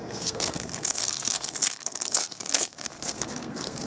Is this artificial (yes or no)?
yes